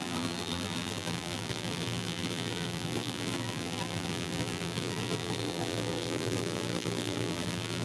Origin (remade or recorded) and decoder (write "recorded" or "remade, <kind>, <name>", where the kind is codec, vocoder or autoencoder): remade, vocoder, BigVGAN v2